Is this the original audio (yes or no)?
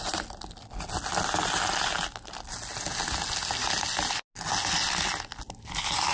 yes